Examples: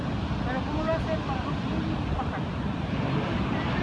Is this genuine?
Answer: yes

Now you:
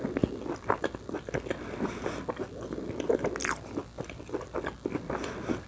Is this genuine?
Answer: no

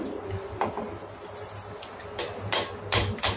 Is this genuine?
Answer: yes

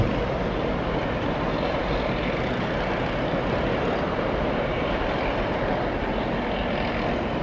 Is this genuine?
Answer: no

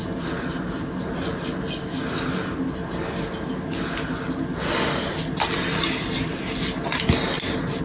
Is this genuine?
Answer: yes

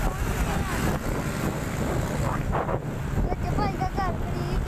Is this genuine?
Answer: yes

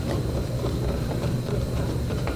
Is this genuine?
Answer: no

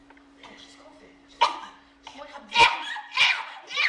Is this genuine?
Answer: no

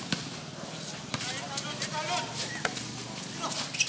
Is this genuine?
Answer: yes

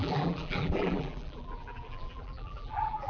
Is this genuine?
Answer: no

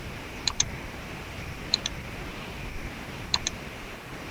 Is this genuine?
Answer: no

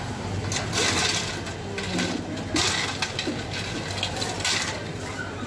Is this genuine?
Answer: yes